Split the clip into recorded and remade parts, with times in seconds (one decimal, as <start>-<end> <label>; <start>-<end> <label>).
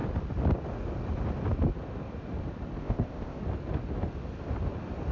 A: 0.0-2.8 recorded; 2.8-3.4 remade; 3.4-5.1 recorded